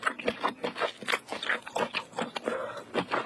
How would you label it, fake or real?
real